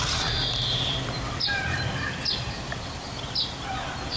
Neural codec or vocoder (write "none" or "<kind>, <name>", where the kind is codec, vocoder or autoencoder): vocoder, BigVGAN v2